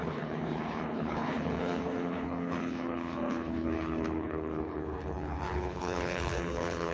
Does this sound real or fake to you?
fake